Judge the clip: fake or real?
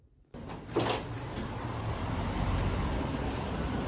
real